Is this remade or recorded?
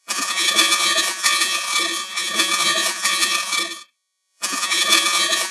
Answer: remade